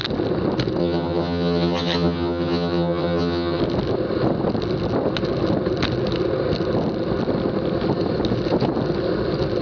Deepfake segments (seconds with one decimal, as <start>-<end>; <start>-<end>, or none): 0.8-3.6